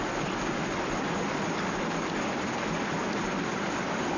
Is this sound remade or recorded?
recorded